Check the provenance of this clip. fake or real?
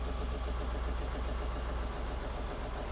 real